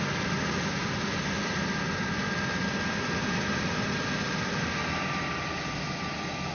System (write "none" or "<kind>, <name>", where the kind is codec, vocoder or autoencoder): none